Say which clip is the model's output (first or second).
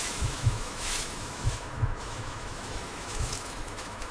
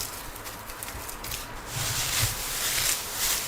first